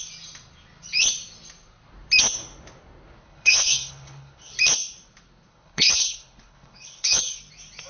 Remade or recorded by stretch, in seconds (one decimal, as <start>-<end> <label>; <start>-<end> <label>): 0.0-3.2 recorded; 3.2-4.5 remade; 4.5-5.5 recorded; 5.5-7.4 remade; 7.4-7.9 recorded